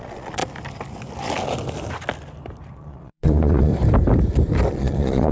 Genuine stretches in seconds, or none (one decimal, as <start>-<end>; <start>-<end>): 0.4-2.7; 3.7-4.7